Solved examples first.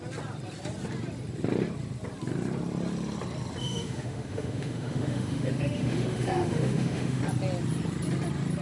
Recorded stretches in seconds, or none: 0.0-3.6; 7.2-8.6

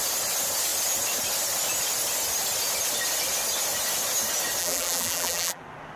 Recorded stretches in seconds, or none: 0.0-4.6; 5.6-6.0

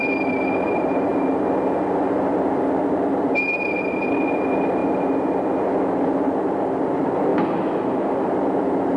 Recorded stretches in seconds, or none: 1.1-1.8; 4.8-5.8; 7.3-8.1

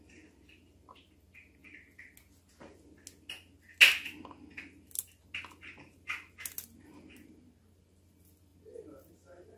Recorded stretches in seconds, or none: 0.0-9.6

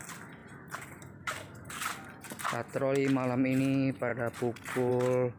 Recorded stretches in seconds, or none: 0.0-5.4

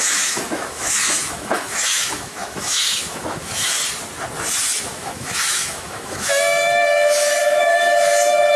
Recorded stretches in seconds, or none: 3.8-4.8